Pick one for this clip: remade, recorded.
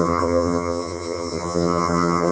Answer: remade